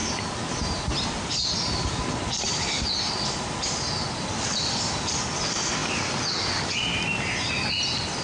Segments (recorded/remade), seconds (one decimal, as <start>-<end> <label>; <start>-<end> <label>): 0.0-8.2 recorded

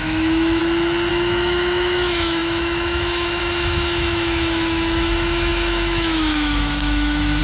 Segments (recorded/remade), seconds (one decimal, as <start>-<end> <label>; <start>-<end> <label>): 0.0-0.6 remade; 0.6-1.1 recorded; 1.1-7.4 remade

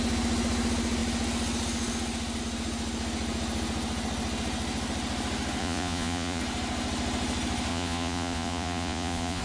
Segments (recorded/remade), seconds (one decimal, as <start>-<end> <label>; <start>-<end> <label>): 0.0-5.6 recorded; 5.6-6.4 remade; 6.4-7.7 recorded; 7.7-9.4 remade